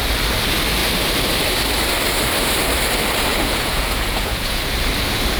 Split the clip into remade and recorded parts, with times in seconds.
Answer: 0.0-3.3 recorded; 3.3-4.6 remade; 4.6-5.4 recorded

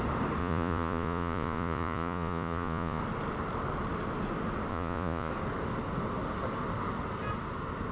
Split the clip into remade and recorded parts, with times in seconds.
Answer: 0.0-0.4 recorded; 0.4-3.0 remade; 3.0-4.7 recorded; 4.7-5.3 remade; 5.3-7.9 recorded

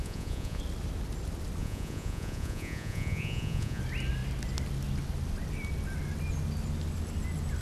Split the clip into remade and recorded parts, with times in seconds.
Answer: 0.0-0.6 remade; 0.6-1.6 recorded; 1.6-3.8 remade; 3.8-7.6 recorded